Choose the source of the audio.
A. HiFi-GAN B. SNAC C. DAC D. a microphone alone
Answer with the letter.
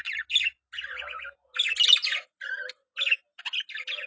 D